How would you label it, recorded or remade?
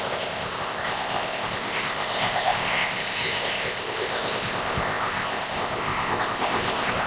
remade